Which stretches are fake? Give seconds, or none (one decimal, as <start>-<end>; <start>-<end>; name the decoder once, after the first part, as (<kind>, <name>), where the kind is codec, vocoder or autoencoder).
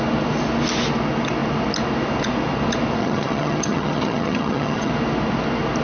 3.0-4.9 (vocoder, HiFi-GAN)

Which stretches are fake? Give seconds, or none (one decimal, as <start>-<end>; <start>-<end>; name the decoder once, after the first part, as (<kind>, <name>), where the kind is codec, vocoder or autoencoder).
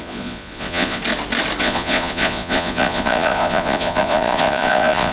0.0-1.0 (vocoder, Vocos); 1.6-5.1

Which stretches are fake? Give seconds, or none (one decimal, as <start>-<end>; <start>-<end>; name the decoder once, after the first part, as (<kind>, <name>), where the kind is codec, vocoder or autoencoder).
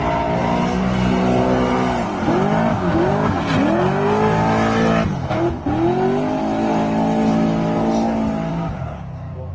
2.7-3.4 (codec, DAC); 8.5-9.5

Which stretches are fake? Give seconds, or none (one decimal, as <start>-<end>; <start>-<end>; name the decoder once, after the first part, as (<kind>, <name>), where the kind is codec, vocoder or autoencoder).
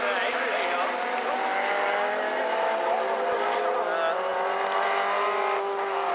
none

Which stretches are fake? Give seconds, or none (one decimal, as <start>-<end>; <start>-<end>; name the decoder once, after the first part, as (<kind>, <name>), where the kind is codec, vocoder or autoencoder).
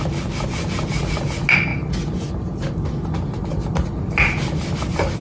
none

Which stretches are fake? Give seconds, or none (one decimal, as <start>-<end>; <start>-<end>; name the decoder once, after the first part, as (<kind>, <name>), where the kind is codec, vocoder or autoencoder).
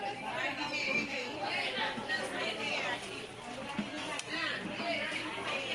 0.8-1.5 (codec, DAC)